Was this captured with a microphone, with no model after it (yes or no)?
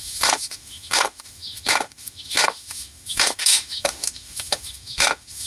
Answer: no